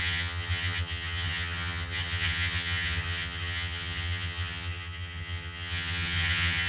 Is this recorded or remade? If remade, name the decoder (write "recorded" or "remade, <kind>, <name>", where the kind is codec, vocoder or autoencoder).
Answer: remade, vocoder, HiFi-GAN